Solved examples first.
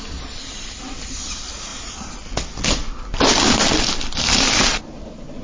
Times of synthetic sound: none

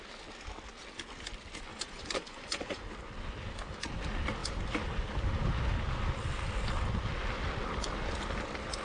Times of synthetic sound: 1.7-2.8 (vocoder, Vocos)

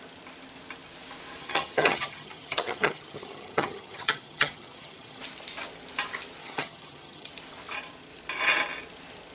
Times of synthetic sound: 1.4-5.2 (vocoder, HiFi-GAN); 6.4-7.3